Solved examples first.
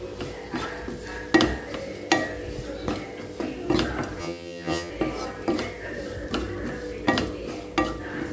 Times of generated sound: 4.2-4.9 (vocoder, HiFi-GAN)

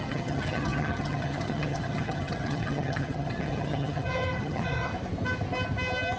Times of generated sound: 0.0-4.9 (vocoder, HiFi-GAN)